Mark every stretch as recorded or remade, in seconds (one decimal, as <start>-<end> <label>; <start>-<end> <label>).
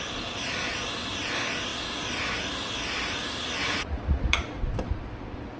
0.0-3.6 recorded; 3.6-4.6 remade; 4.6-5.6 recorded